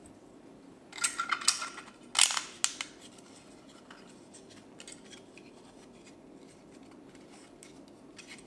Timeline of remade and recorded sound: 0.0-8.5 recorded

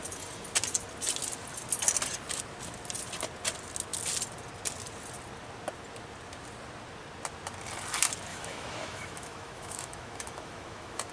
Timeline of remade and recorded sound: 0.0-8.3 recorded; 8.3-11.1 remade

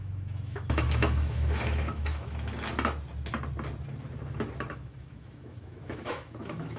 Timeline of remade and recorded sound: 0.0-2.5 remade; 2.5-4.7 recorded; 4.7-6.8 remade

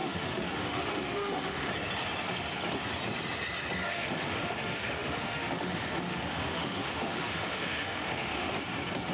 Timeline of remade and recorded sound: 0.0-1.7 remade; 1.7-3.8 recorded; 3.8-8.5 remade; 8.5-9.1 recorded

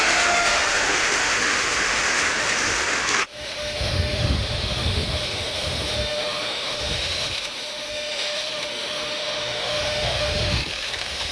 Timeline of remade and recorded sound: 0.0-11.3 remade

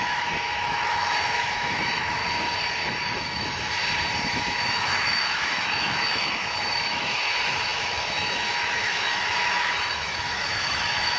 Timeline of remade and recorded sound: 0.0-2.2 remade; 2.2-3.2 recorded; 3.2-3.8 remade; 3.8-4.3 recorded; 4.3-11.2 remade